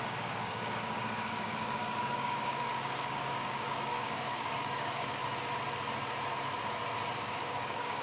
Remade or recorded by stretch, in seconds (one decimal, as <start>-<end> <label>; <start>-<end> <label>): 0.0-5.2 remade; 5.2-7.2 recorded; 7.2-8.0 remade